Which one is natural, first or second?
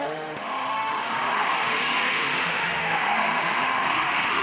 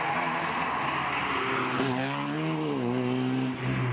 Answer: second